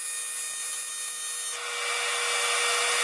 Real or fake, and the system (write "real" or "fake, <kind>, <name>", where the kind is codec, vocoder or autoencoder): real